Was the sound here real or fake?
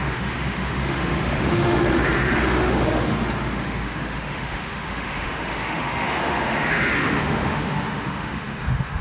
fake